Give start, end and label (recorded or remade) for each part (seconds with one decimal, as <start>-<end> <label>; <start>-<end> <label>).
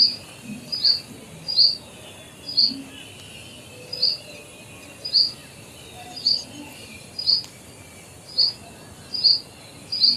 0.0-5.4 recorded; 5.4-7.3 remade; 7.3-10.2 recorded